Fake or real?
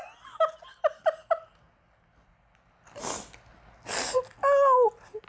real